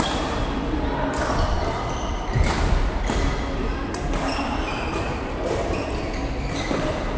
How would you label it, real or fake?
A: real